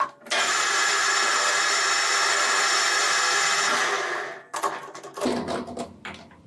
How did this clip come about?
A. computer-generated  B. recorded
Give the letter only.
B